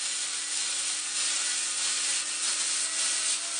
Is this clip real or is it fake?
real